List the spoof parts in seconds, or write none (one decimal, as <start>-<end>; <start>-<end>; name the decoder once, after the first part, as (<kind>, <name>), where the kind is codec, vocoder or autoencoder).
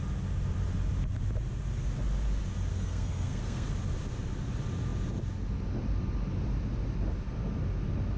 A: 2.7-3.7 (codec, SNAC)